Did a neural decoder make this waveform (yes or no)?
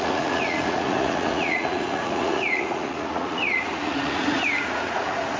yes